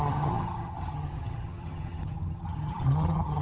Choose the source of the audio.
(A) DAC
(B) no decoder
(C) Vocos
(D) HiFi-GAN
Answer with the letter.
D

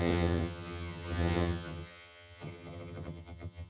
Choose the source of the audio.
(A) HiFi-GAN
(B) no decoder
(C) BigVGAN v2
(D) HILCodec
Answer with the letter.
A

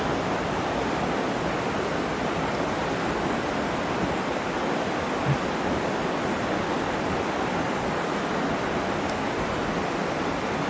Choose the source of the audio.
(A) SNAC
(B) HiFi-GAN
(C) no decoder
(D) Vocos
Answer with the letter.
C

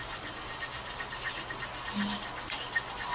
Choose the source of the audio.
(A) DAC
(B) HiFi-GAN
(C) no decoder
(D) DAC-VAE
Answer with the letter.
C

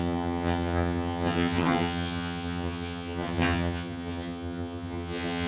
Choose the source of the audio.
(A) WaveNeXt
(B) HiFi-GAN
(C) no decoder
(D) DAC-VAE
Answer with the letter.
B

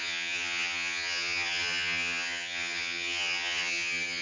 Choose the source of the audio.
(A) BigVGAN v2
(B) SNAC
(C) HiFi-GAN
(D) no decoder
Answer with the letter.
C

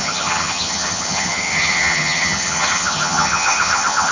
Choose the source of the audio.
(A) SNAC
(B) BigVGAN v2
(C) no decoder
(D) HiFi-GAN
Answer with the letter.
D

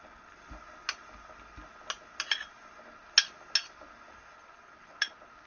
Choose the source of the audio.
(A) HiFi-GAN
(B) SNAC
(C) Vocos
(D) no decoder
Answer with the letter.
D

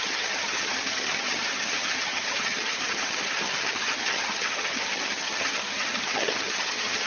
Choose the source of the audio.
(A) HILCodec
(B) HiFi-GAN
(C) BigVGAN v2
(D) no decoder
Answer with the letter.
B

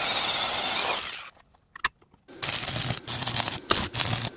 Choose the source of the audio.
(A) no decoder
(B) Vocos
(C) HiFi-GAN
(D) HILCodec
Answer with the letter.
A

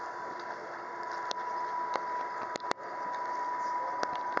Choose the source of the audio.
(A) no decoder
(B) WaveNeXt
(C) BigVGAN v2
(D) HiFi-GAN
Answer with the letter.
A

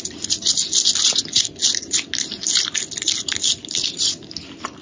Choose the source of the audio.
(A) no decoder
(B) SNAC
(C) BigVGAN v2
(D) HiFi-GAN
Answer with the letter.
A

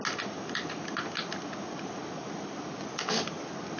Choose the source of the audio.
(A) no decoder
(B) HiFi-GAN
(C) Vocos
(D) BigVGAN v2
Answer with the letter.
A